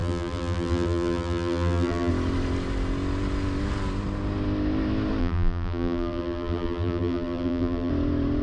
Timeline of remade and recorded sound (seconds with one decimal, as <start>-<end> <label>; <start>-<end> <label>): 0.0-2.1 remade; 2.1-5.2 recorded; 5.2-7.9 remade; 7.9-8.4 recorded